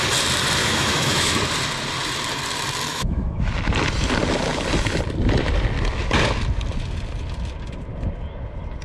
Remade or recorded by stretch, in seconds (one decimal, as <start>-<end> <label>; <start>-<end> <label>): 0.0-0.6 recorded; 0.6-1.4 remade; 1.4-2.9 recorded; 2.9-3.5 remade; 3.5-8.8 recorded